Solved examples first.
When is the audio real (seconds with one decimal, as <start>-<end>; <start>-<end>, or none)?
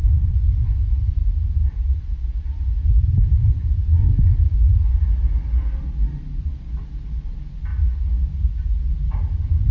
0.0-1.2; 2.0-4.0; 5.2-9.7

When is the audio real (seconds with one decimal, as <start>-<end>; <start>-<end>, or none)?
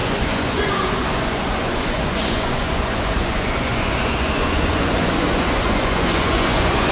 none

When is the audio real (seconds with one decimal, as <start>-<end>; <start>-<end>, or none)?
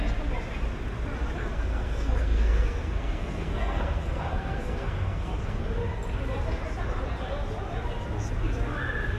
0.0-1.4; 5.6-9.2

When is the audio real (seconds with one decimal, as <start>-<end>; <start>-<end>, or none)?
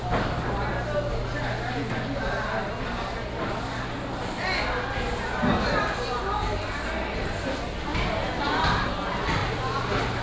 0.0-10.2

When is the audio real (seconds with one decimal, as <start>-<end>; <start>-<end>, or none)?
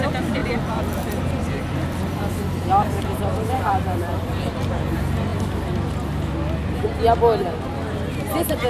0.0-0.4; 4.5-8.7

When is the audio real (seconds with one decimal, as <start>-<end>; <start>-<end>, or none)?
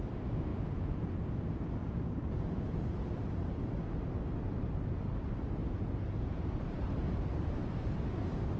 0.0-0.5; 1.1-1.8; 3.6-5.6; 7.6-8.6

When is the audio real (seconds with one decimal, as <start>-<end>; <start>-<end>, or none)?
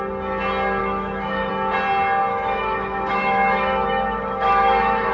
0.0-0.8; 1.5-2.3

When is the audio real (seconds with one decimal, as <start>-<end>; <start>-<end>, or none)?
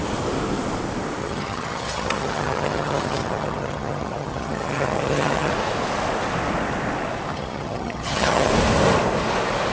0.0-1.2; 5.5-7.3; 8.5-9.7